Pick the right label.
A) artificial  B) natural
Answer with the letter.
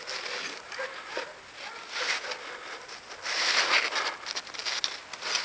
B